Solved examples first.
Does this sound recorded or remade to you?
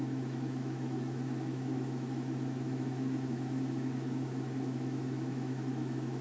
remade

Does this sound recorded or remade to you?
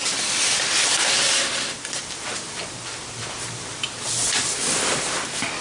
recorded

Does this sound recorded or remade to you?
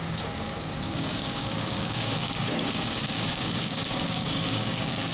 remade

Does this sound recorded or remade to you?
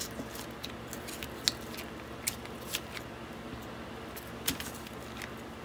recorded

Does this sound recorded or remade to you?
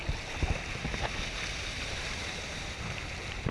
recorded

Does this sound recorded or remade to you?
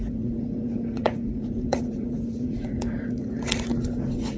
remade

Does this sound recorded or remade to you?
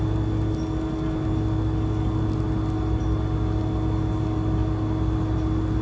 recorded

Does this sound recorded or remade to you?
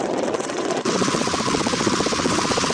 remade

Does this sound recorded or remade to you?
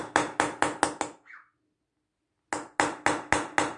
recorded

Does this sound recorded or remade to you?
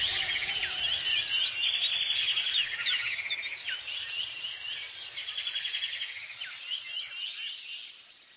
recorded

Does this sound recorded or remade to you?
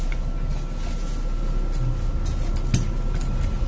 recorded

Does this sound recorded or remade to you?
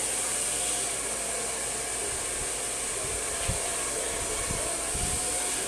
recorded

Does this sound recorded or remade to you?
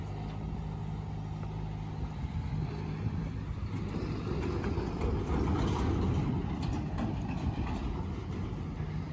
recorded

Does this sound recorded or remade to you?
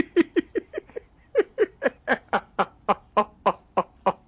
recorded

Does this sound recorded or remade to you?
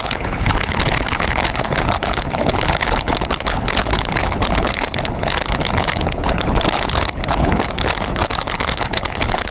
remade